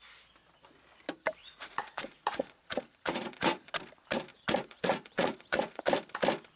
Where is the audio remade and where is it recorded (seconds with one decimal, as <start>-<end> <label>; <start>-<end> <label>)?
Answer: 0.0-1.4 recorded; 1.4-3.7 remade; 3.7-4.3 recorded; 4.3-5.8 remade; 5.8-6.6 recorded